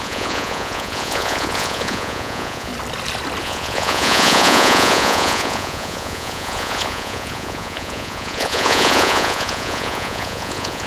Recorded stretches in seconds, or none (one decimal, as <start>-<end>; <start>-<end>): 2.7-3.4